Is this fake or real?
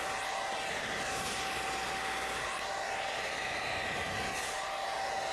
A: real